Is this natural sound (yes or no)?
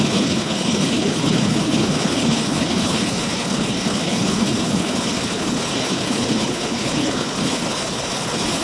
no